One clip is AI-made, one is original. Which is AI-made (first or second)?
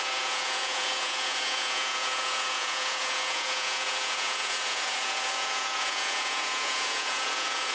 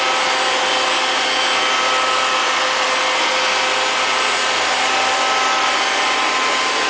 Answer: first